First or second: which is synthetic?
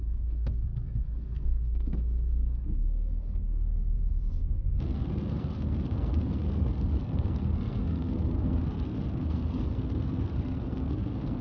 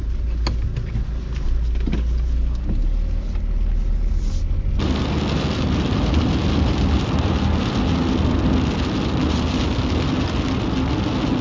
first